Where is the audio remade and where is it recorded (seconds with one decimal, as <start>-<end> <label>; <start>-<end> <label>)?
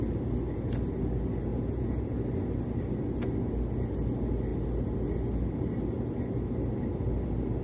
0.0-1.5 recorded; 1.5-2.2 remade; 2.2-7.6 recorded